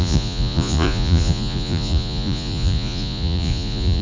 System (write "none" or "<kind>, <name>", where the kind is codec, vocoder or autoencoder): vocoder, Vocos